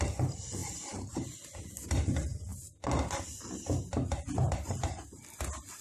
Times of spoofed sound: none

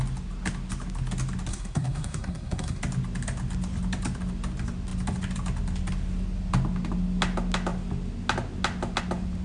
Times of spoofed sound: 1.5-2.8 (codec, SNAC)

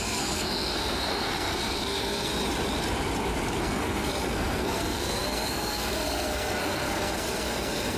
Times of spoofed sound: 0.0-2.3 (codec, SNAC); 3.6-8.0

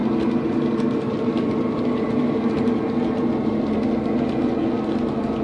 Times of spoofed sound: none